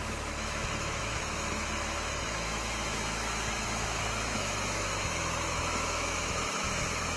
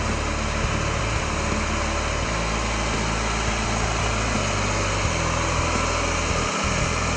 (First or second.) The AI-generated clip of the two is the first